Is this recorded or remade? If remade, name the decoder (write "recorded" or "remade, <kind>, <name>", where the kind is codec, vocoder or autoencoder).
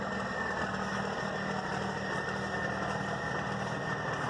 recorded